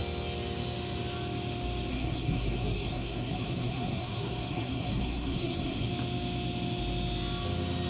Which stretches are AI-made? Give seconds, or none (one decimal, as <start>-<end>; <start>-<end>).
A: 1.9-5.9